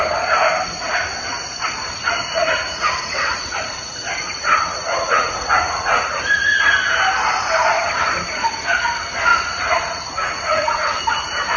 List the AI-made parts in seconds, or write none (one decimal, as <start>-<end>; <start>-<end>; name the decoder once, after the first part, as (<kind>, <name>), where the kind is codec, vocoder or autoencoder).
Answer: 1.8-6.2 (vocoder, Vocos); 9.3-11.0